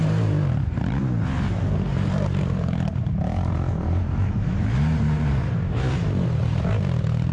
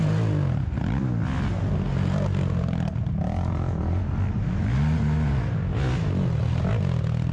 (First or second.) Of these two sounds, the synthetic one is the first